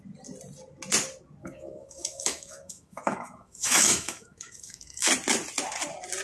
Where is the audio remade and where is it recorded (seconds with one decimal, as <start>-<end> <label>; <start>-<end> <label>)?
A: 0.0-1.4 recorded; 1.4-5.1 remade; 5.1-6.2 recorded